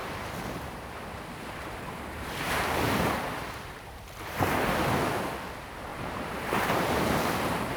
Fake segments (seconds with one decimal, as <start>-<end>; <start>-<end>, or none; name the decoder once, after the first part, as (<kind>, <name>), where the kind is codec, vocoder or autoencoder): 0.0-4.4 (vocoder, BigVGAN v2); 5.9-7.8